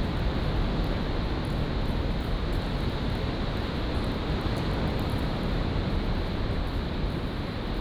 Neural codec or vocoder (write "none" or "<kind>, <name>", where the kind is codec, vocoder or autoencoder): none